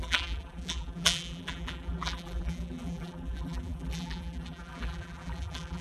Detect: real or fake fake